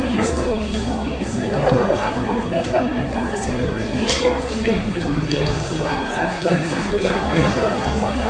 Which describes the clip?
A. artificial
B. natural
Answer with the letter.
A